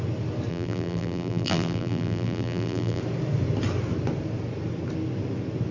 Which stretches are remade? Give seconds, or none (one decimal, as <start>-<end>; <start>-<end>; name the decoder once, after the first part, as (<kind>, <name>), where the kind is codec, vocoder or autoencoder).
0.5-3.0 (vocoder, BigVGAN v2)